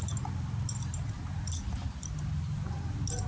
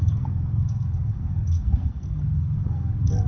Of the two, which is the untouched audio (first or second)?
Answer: first